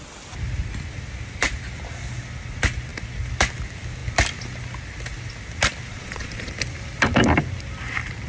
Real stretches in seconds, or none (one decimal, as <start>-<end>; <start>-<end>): 0.0-5.9; 6.5-8.3